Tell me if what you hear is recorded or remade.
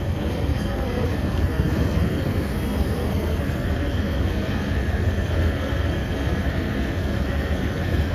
remade